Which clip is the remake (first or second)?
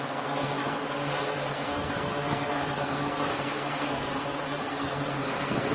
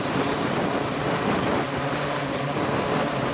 first